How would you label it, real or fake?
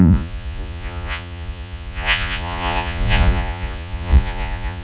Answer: fake